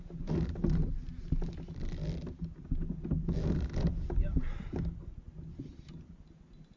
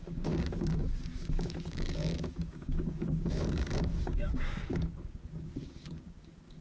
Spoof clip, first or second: second